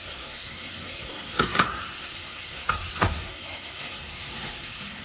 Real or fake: fake